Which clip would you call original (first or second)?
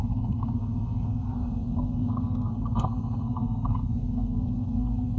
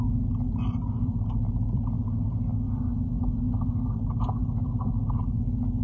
second